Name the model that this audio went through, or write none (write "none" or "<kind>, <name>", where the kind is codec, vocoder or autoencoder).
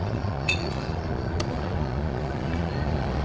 vocoder, Vocos